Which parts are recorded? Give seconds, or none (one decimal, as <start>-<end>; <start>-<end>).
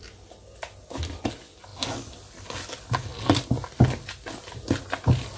0.0-5.4